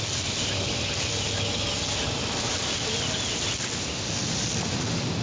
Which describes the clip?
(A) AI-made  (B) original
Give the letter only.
B